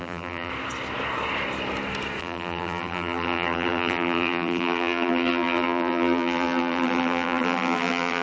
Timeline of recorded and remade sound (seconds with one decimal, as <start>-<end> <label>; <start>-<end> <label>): 0.0-0.5 remade; 0.5-2.2 recorded; 2.2-8.2 remade

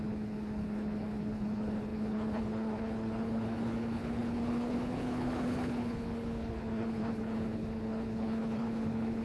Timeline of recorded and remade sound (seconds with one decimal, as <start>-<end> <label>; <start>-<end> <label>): 0.0-9.2 remade

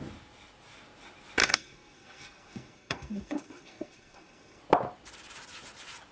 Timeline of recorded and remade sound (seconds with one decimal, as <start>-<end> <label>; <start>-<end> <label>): 0.0-1.4 recorded; 1.4-4.6 remade; 4.6-6.1 recorded